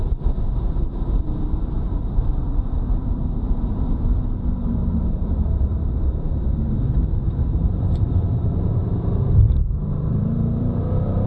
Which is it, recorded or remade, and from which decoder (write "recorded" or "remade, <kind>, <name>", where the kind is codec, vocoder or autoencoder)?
remade, vocoder, BigVGAN v2